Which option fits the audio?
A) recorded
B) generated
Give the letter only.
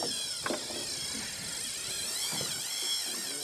A